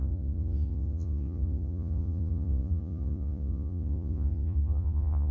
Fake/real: fake